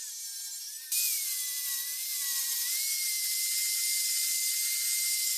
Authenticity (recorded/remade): recorded